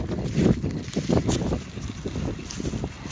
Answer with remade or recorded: recorded